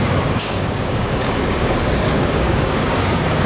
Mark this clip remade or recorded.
remade